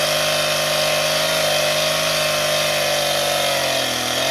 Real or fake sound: real